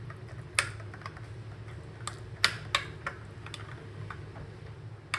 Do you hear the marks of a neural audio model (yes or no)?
no